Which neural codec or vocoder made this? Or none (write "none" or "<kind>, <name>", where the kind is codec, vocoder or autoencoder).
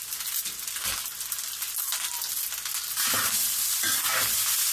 none